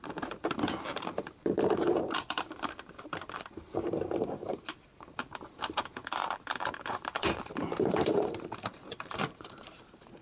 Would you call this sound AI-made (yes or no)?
yes